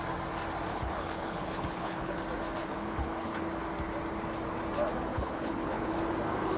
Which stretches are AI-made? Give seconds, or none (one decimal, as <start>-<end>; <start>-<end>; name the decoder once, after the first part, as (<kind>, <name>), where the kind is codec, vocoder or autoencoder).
0.7-2.2 (codec, HILCodec); 2.6-3.4; 5.1-6.0